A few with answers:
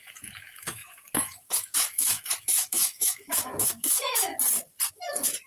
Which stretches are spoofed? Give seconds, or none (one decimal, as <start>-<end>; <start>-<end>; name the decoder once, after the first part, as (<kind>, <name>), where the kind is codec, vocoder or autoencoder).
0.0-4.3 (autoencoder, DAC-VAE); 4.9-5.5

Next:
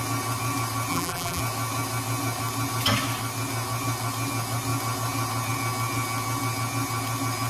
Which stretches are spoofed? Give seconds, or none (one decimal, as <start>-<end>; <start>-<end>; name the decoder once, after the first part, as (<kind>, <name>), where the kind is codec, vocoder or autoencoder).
0.9-1.4 (vocoder, BigVGAN v2)

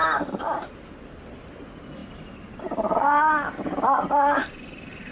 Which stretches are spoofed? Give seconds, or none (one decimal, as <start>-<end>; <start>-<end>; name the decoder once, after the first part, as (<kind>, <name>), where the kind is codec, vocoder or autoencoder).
none

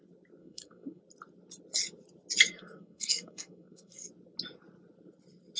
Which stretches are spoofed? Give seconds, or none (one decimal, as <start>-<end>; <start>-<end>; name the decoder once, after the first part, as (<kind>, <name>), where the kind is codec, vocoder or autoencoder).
0.4-1.0 (codec, SNAC); 2.5-4.1